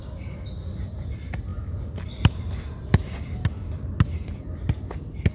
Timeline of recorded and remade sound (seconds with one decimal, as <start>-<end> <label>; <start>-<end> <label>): 0.0-5.3 recorded